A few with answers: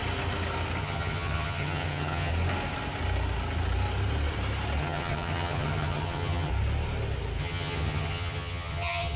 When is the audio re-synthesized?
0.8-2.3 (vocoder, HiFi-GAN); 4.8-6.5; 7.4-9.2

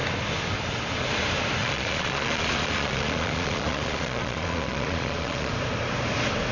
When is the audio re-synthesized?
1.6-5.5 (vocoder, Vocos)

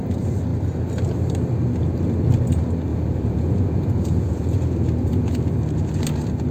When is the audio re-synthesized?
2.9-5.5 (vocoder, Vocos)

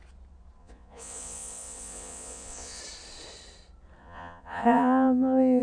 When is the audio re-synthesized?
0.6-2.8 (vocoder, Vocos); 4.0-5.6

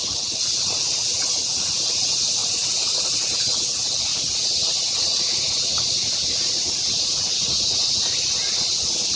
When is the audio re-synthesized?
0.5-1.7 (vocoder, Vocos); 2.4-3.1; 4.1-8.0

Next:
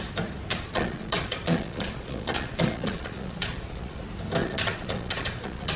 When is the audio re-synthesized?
0.5-4.0 (vocoder, Vocos); 4.4-5.8

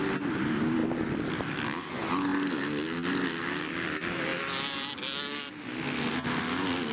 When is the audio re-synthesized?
none

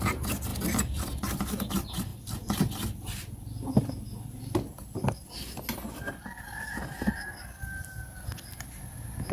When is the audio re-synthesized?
none